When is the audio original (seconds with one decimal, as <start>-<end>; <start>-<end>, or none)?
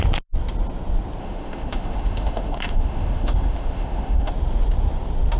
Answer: 0.0-1.2; 4.3-5.4